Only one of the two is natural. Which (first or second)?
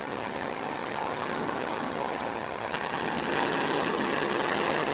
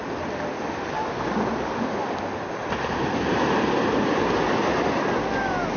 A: second